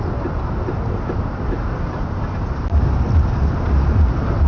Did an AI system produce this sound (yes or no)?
no